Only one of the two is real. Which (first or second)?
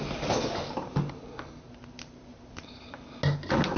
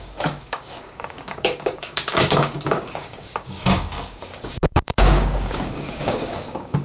first